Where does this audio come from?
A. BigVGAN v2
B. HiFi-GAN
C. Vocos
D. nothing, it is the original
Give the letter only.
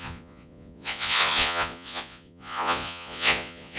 C